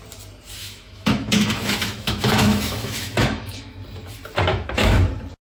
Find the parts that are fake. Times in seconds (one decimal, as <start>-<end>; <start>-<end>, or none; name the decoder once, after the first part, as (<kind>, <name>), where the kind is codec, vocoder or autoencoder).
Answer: 0.6-3.8 (autoencoder, DAC-VAE); 4.5-5.0

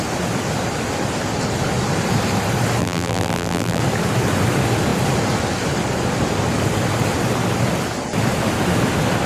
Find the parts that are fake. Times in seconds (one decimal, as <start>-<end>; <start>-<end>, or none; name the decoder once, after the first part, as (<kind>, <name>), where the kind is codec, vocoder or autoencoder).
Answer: 2.8-3.8 (vocoder, BigVGAN v2)

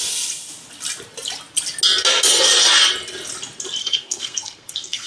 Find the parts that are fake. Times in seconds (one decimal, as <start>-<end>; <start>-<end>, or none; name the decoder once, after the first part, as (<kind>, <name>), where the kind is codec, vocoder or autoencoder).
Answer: 3.8-5.1 (codec, SNAC)

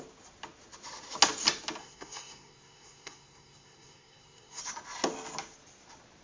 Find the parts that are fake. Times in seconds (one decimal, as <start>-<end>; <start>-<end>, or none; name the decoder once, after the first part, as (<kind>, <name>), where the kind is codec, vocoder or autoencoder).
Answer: 1.8-4.6 (codec, SNAC)

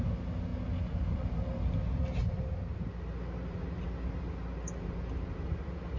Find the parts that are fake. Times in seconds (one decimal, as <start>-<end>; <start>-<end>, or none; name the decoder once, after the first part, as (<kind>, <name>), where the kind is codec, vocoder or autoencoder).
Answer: none

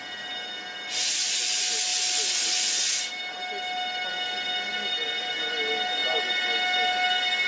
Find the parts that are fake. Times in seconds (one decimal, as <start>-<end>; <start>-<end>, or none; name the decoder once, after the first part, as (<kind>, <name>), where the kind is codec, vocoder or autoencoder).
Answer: none

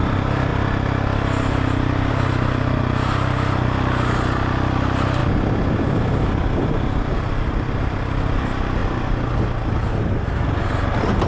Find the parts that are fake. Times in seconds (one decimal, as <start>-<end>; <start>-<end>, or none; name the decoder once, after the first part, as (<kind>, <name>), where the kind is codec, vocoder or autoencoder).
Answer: 7.1-8.2 (vocoder, BigVGAN v2)